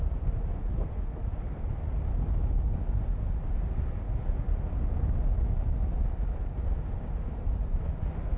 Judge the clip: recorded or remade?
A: recorded